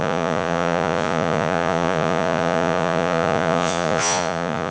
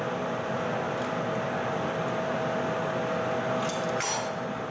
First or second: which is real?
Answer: second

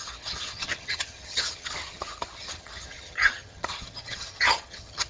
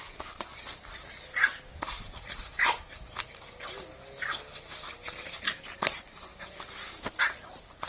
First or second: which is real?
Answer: second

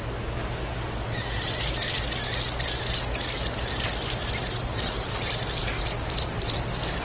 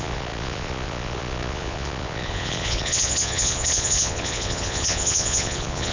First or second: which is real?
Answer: first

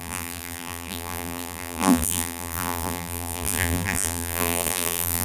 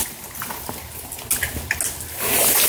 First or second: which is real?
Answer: second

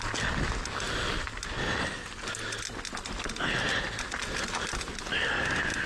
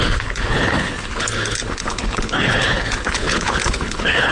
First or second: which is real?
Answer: first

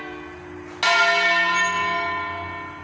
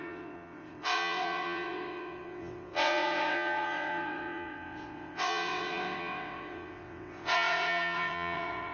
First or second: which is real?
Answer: first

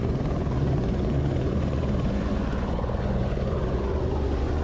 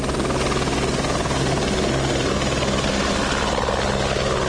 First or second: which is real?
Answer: second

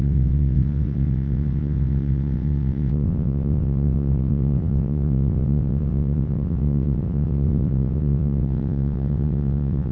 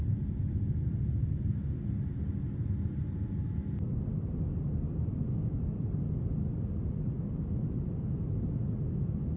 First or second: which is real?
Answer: second